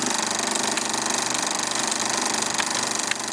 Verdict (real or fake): real